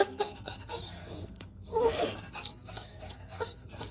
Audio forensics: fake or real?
fake